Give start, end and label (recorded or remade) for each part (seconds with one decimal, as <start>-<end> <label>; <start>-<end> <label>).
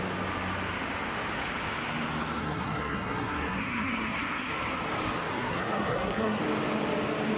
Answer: 0.0-2.4 recorded; 2.4-4.5 remade; 4.5-5.3 recorded; 5.3-6.4 remade; 6.4-7.4 recorded